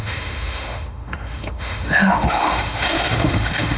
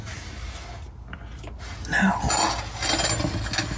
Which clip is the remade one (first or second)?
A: first